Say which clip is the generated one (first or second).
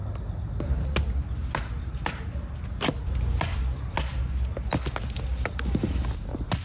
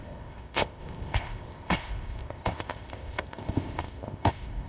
second